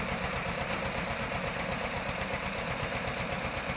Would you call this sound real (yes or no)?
no